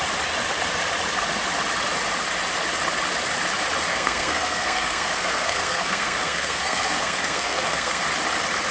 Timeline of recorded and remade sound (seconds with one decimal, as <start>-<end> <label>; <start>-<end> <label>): 0.0-3.9 recorded; 3.9-8.0 remade; 8.0-8.7 recorded